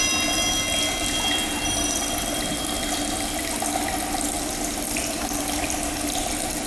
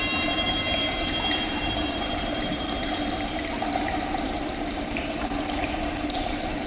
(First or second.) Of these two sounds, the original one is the first